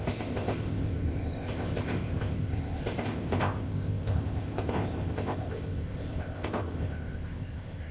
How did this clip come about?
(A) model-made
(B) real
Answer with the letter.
A